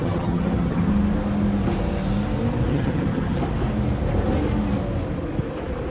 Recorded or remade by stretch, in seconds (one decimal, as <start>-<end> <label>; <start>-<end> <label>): 0.0-0.9 remade; 0.9-2.7 recorded; 2.7-3.4 remade; 3.4-5.9 recorded